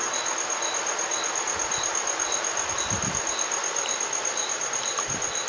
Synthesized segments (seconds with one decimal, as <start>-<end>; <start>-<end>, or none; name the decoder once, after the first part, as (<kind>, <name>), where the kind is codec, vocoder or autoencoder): none